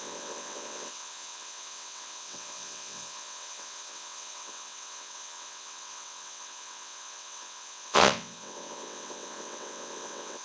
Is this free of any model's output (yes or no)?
no